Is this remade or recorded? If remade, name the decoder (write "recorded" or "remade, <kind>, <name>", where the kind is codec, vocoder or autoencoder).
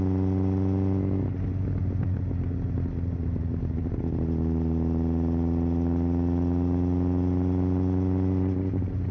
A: recorded